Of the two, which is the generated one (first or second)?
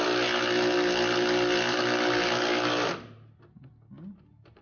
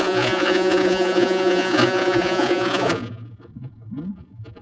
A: second